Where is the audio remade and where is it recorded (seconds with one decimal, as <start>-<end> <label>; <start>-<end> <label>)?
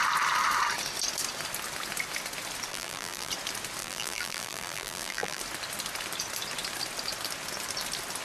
0.0-2.7 recorded; 2.7-3.3 remade; 3.3-3.8 recorded; 3.8-5.4 remade; 5.4-8.2 recorded